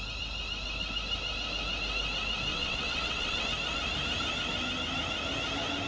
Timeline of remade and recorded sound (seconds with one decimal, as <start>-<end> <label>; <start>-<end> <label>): 0.0-2.5 recorded; 2.5-3.4 remade; 3.4-5.9 recorded